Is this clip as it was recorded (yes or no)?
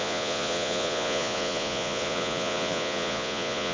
no